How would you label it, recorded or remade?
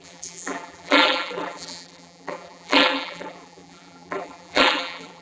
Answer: remade